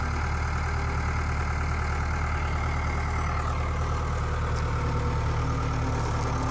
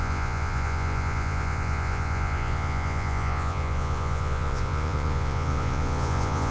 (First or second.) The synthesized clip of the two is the second